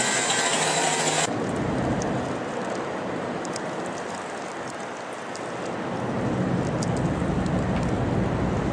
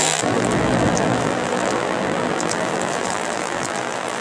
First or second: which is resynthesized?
second